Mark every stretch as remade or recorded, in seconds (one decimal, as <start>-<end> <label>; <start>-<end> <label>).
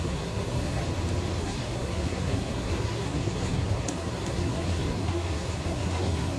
0.0-0.8 remade; 0.8-1.4 recorded; 1.4-6.4 remade